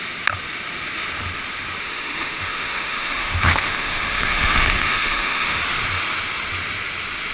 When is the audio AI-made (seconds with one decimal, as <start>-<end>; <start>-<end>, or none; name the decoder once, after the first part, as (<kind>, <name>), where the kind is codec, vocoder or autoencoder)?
1.8-5.6 (autoencoder, DAC-VAE)